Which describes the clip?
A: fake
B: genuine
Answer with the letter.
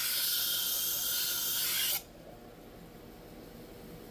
B